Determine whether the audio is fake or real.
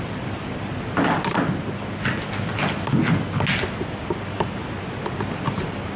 real